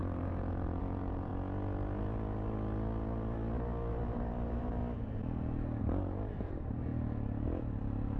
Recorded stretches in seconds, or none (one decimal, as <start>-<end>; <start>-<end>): 1.3-3.9; 4.8-5.8; 6.9-8.2